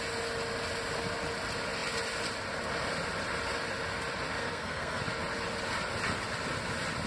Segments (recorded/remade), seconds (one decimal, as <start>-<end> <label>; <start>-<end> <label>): 0.0-4.4 recorded; 4.4-5.0 remade; 5.0-7.1 recorded